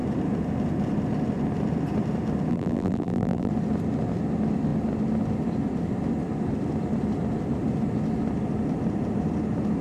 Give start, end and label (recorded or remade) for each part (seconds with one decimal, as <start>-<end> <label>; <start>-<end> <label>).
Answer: 0.0-2.5 recorded; 2.5-3.5 remade; 3.5-9.8 recorded